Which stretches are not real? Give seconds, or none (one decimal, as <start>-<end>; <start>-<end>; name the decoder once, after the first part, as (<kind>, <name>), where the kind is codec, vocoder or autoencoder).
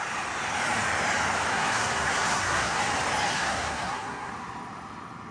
1.5-2.8 (codec, SNAC); 3.3-4.3